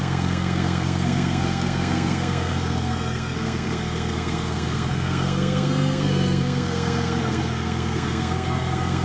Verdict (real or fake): fake